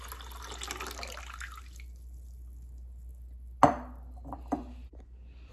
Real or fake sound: real